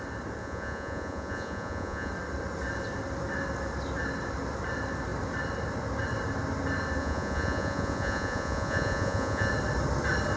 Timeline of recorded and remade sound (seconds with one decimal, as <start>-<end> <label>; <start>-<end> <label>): 0.0-0.4 recorded; 0.4-2.1 remade; 2.1-7.0 recorded; 7.0-9.5 remade; 9.5-10.4 recorded